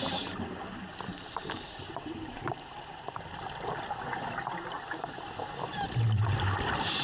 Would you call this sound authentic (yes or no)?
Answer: yes